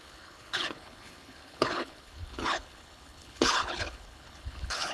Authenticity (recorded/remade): remade